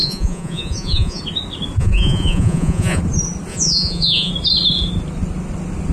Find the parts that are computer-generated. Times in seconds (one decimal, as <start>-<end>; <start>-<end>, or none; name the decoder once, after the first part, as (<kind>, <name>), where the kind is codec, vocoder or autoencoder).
0.0-1.2 (vocoder, Vocos); 1.8-3.0; 3.5-4.3